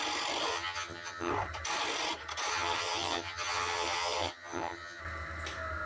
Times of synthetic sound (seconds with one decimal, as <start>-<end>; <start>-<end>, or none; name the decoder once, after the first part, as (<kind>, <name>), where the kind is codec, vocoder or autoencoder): 0.5-1.3 (vocoder, HiFi-GAN); 2.5-5.0